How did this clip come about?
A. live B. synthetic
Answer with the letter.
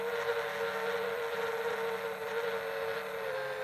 A